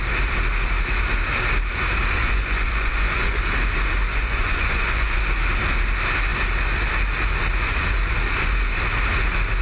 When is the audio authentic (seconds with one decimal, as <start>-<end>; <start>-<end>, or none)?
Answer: 0.0-2.2; 3.4-4.1; 5.2-9.6